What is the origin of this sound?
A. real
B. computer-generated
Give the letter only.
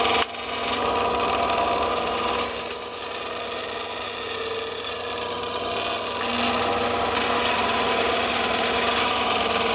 A